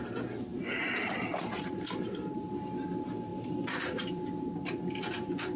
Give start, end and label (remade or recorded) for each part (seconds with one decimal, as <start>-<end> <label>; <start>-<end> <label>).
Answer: 0.0-0.5 recorded; 0.5-2.0 remade; 2.0-3.3 recorded; 3.3-5.6 remade